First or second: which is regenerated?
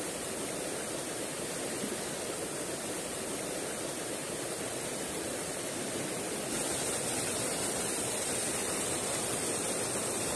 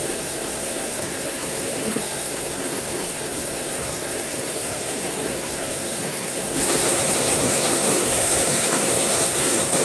second